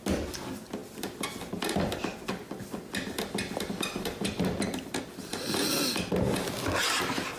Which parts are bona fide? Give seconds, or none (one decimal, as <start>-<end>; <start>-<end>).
0.0-7.4